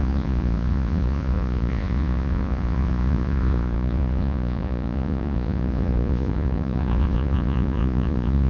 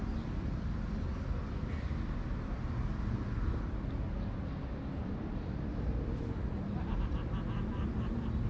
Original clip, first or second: second